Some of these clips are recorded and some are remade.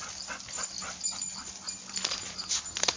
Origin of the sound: recorded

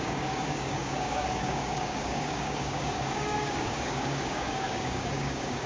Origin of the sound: remade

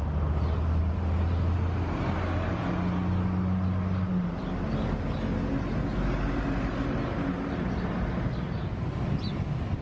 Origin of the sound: recorded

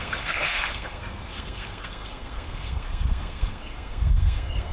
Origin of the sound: remade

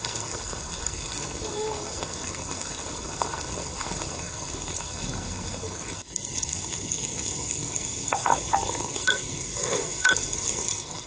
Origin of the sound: remade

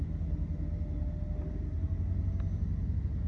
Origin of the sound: recorded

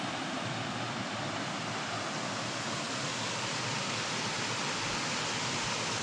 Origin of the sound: recorded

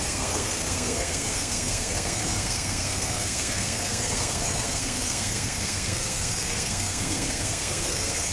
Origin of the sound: remade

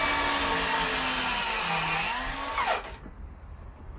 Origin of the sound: recorded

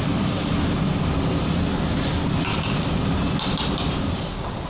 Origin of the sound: recorded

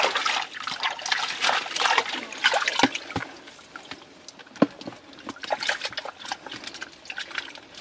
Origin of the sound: recorded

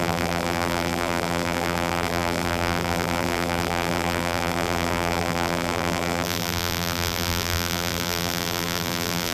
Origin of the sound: remade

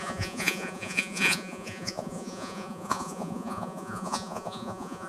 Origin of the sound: remade